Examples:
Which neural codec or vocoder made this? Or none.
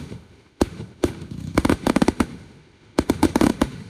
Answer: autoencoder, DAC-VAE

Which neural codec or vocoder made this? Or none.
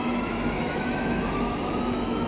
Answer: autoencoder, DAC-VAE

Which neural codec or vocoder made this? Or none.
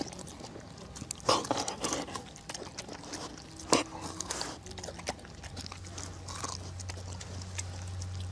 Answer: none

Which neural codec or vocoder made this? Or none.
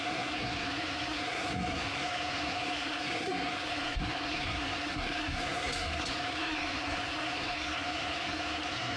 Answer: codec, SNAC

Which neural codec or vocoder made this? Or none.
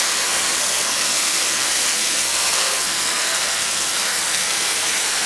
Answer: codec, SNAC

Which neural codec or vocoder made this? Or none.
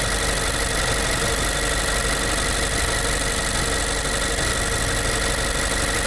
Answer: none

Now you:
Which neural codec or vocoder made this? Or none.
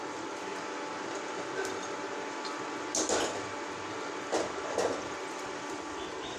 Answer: none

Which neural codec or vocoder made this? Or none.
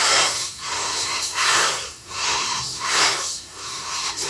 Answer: codec, SNAC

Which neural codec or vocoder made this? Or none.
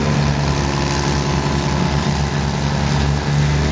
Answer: none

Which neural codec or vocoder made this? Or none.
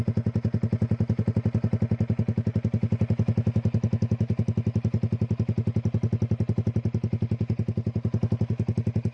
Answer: none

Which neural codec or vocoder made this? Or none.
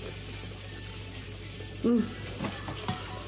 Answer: none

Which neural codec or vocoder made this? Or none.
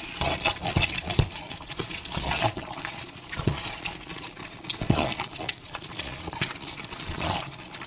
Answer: vocoder, Vocos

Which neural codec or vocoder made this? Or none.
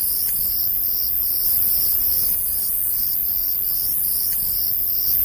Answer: none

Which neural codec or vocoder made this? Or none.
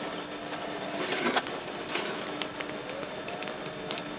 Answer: none